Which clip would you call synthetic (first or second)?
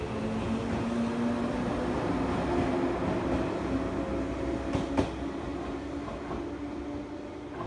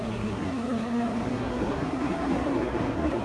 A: second